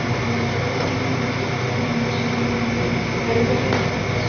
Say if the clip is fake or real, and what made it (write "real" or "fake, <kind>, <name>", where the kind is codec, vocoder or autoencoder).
real